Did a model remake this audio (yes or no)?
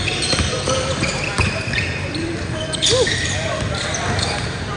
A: yes